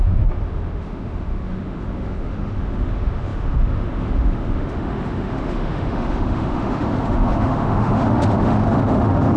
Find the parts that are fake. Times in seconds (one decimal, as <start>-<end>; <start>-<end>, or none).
0.0-9.4